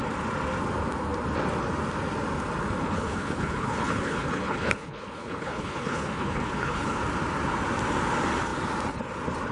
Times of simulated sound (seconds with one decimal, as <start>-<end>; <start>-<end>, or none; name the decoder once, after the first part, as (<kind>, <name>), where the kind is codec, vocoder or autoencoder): 2.8-7.0 (codec, HILCodec)